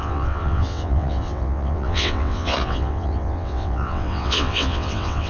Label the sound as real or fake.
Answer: fake